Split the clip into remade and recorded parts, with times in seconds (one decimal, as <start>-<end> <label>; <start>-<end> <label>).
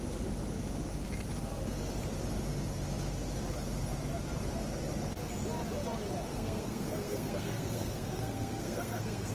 0.0-6.3 recorded; 6.3-9.3 remade